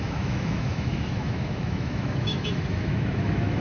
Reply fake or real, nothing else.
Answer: fake